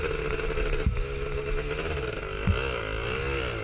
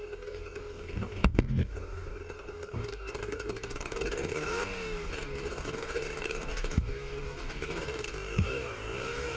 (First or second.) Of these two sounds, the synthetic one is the second